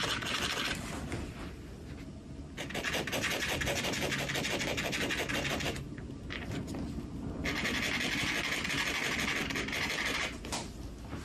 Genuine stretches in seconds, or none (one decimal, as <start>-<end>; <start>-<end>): 0.0-9.4; 10.4-11.2